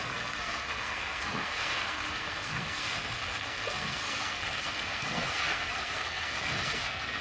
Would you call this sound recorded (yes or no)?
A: no